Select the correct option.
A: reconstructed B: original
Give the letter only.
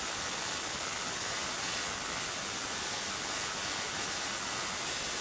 B